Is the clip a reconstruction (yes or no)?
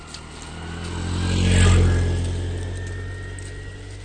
no